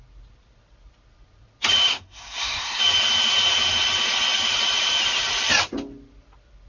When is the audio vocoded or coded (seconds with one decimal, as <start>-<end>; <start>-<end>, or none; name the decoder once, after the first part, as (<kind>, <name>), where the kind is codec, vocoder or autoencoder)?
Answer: 1.9-2.8 (codec, SNAC)